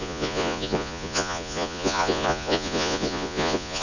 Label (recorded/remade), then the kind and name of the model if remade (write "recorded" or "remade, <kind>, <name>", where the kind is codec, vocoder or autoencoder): remade, vocoder, Vocos